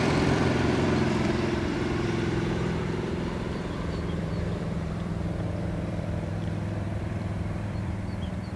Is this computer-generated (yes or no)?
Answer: yes